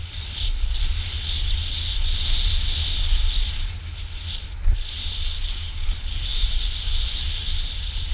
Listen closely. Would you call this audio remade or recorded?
recorded